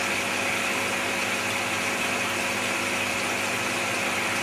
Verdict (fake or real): real